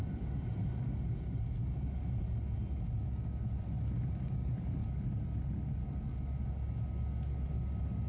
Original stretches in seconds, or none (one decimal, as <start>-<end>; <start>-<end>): 0.0-8.1